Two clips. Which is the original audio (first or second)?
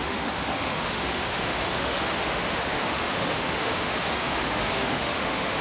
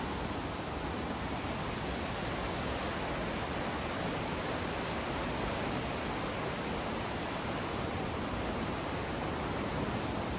second